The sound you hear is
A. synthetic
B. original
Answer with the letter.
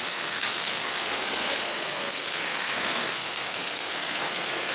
A